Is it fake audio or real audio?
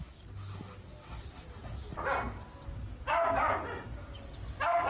real